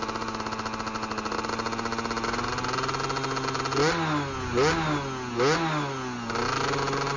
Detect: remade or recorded recorded